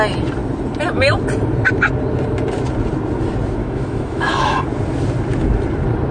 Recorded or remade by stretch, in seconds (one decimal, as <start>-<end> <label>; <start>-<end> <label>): 0.0-3.6 recorded; 3.6-4.6 remade; 4.6-6.1 recorded